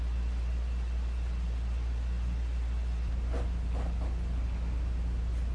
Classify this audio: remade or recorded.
recorded